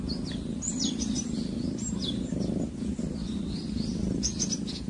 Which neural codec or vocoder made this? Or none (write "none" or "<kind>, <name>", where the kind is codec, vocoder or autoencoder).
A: none